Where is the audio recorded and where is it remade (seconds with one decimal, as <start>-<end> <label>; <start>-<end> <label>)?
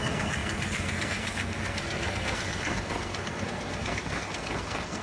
0.0-5.0 remade